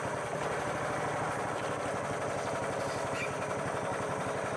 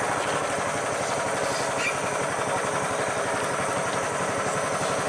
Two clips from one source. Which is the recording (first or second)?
second